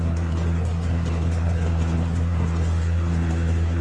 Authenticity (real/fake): fake